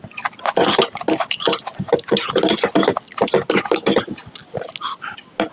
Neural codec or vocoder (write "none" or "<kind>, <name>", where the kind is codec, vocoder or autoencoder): none